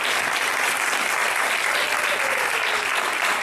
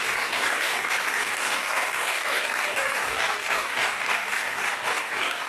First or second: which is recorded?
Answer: first